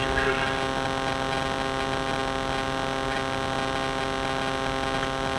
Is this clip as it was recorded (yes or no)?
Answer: yes